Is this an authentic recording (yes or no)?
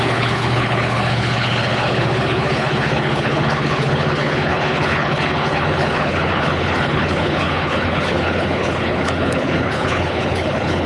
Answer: no